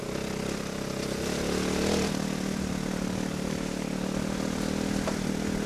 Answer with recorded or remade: recorded